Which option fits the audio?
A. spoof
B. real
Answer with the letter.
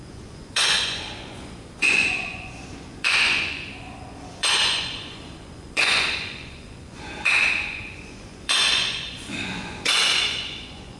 A